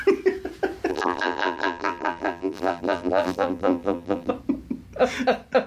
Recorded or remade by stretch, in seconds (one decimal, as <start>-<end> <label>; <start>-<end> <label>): 0.0-0.9 recorded; 0.9-4.3 remade; 4.3-5.7 recorded